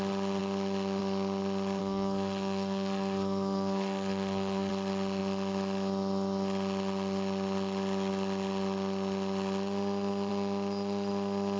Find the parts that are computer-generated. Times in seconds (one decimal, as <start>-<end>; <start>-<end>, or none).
1.8-4.7